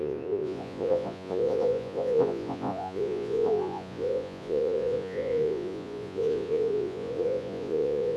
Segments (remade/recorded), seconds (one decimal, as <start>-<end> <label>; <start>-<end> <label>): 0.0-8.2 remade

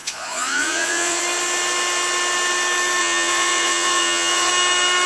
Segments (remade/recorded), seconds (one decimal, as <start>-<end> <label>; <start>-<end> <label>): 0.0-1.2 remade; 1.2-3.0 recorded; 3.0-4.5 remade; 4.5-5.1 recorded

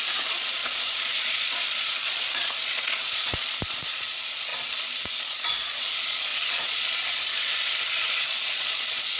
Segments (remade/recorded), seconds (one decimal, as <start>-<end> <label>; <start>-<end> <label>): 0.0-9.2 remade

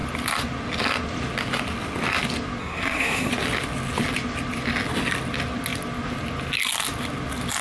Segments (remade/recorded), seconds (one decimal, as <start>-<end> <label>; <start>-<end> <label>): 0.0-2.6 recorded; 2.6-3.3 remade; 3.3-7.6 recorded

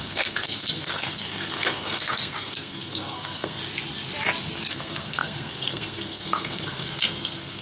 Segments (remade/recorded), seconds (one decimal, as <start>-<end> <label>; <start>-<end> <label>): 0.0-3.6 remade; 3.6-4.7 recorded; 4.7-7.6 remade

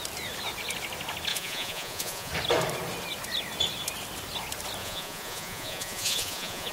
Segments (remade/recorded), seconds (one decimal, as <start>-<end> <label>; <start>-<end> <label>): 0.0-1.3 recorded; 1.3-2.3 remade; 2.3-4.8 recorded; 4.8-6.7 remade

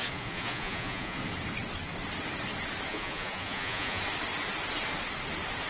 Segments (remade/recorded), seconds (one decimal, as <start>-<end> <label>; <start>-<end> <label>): 0.0-1.2 remade; 1.2-2.9 recorded; 2.9-4.0 remade; 4.0-5.7 recorded